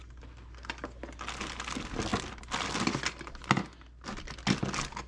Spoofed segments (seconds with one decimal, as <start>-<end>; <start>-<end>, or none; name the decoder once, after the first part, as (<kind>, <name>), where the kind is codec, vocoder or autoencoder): none